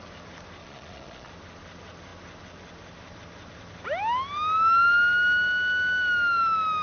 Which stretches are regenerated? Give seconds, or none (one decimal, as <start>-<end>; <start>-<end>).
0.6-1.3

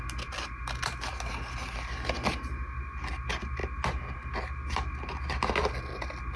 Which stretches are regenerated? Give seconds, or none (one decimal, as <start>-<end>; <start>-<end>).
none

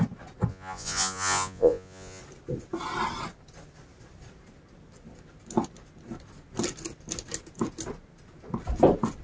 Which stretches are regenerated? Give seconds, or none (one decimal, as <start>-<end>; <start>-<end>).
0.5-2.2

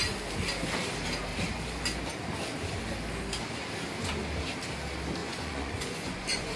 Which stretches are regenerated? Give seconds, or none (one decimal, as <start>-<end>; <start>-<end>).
5.2-6.6

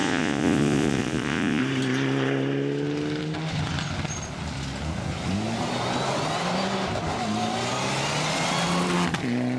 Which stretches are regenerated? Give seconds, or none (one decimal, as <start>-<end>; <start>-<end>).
0.0-1.6

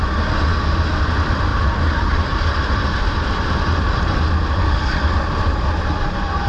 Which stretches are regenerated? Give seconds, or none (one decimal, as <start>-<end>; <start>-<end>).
1.5-4.0

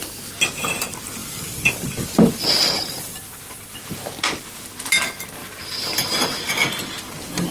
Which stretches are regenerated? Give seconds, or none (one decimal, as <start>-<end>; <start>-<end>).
1.2-3.8; 5.4-6.5

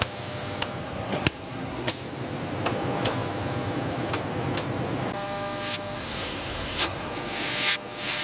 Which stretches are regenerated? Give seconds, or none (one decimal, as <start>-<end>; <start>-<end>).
0.8-1.9; 6.0-7.1